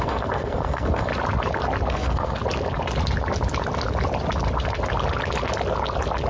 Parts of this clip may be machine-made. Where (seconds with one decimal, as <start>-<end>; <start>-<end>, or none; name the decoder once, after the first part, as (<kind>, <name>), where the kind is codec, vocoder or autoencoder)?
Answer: 0.0-1.1 (codec, SNAC); 1.9-2.4